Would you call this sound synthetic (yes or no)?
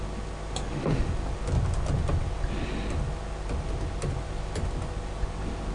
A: no